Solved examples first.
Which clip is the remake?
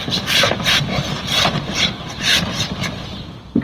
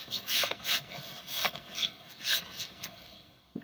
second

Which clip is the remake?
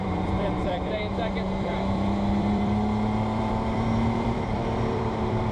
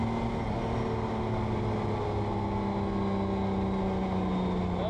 first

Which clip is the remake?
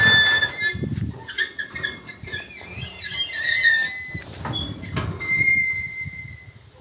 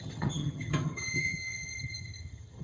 second